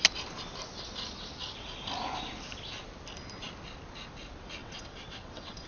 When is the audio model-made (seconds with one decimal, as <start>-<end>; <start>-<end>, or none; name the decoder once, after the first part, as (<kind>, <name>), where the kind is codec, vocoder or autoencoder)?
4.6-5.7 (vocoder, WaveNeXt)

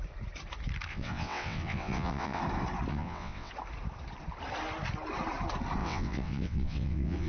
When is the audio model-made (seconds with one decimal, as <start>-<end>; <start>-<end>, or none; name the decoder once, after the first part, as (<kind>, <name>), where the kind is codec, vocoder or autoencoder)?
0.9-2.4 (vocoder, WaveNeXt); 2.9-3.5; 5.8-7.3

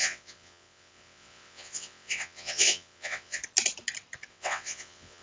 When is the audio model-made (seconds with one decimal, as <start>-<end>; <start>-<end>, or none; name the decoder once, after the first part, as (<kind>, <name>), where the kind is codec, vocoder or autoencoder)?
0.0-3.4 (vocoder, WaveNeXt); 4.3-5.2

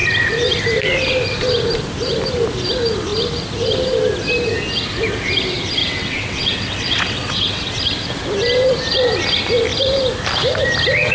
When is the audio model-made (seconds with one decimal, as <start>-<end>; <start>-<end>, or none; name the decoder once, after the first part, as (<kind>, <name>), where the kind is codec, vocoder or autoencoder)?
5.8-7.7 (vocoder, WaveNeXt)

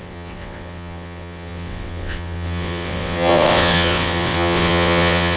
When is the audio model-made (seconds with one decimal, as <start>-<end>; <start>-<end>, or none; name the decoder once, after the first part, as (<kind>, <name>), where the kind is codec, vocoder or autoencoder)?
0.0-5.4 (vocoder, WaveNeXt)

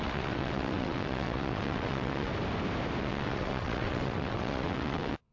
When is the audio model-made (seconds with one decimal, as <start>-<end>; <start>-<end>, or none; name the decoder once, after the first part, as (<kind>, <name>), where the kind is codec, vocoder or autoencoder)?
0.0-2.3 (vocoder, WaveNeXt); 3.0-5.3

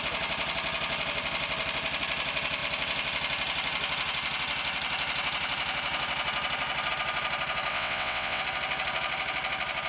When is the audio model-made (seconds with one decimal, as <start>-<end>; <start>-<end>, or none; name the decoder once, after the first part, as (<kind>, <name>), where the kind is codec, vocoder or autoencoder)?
7.7-8.4 (vocoder, WaveNeXt)

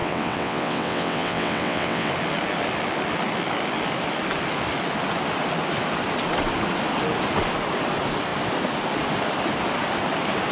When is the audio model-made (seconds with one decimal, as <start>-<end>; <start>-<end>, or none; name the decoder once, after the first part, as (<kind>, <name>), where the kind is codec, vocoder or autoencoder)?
0.0-2.1 (vocoder, WaveNeXt)